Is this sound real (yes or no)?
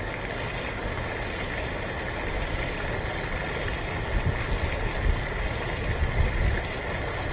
yes